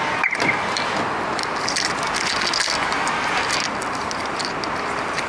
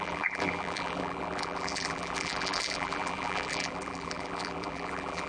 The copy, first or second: second